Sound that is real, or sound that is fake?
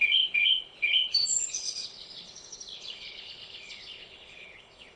fake